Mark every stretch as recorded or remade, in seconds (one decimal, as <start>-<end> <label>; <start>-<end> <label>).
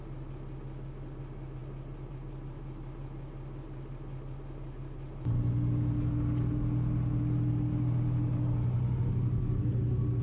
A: 0.0-10.2 recorded